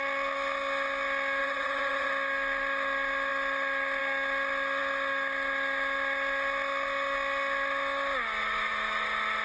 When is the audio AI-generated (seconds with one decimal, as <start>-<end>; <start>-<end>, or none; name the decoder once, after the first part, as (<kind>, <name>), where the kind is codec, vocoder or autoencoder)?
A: 1.4-2.1 (vocoder, WaveNeXt)